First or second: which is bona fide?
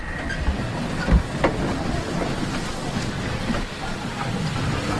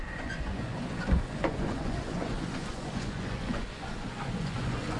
first